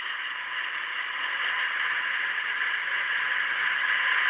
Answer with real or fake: real